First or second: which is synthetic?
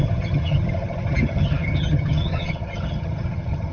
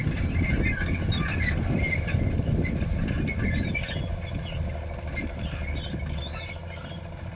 first